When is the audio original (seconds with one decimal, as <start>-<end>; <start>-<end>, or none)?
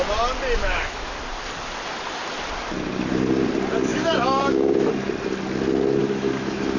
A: 0.0-0.6; 1.2-3.9; 4.9-6.0